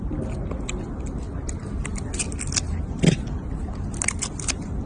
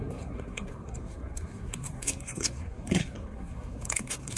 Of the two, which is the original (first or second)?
first